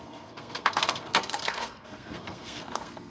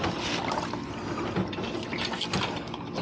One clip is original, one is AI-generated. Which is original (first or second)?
second